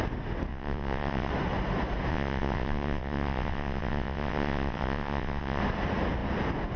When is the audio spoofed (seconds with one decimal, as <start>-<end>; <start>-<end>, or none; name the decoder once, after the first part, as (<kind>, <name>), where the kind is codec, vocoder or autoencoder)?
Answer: 0.5-1.3 (vocoder, WaveNeXt); 2.1-5.6